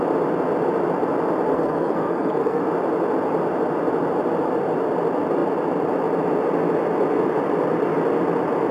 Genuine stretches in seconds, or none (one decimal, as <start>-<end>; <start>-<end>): 0.0-1.5; 2.6-8.7